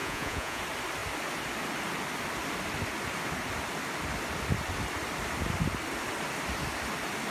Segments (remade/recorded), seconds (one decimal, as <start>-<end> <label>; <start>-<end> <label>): 0.0-0.6 remade; 0.6-7.3 recorded